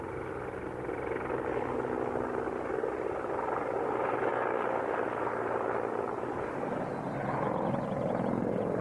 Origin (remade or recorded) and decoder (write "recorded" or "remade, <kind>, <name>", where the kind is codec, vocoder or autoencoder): recorded